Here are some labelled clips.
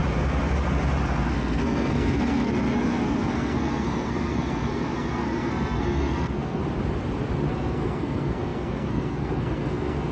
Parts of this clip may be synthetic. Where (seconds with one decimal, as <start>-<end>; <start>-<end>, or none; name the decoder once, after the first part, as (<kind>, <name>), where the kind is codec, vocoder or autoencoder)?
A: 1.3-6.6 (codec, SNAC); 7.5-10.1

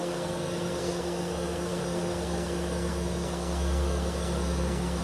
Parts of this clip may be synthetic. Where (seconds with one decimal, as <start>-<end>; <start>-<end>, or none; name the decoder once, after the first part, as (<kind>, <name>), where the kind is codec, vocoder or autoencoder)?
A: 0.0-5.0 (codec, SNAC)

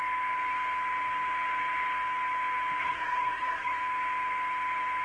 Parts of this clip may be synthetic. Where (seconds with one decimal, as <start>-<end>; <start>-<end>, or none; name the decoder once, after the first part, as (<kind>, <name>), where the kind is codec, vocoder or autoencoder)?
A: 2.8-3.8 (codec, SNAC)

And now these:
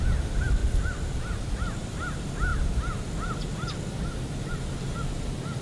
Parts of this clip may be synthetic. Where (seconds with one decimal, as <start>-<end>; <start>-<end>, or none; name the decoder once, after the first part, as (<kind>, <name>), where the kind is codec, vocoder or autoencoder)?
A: none

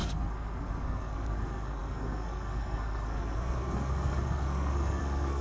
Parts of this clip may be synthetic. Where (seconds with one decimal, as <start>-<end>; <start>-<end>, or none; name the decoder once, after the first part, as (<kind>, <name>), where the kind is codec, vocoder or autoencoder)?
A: 0.0-5.4 (codec, SNAC)

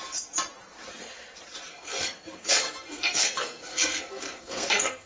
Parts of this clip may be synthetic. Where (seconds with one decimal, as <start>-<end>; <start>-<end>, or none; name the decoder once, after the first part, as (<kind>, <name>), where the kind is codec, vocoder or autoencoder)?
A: 1.7-5.1 (codec, SNAC)